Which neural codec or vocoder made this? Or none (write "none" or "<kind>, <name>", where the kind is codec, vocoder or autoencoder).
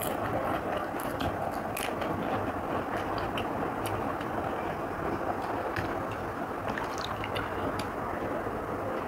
none